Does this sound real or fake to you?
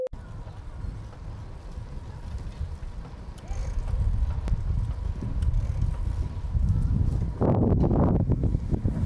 real